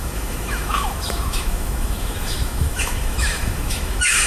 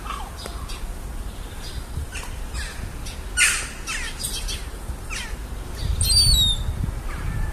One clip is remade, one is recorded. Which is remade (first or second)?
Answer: first